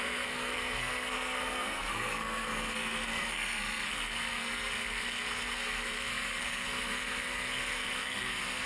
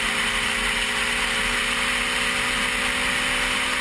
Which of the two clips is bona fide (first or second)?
second